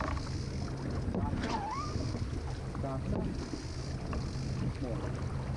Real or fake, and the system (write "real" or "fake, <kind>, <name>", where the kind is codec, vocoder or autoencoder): real